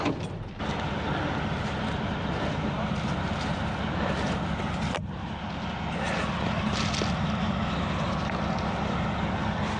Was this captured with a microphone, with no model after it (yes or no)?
yes